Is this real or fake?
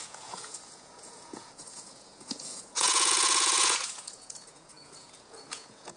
fake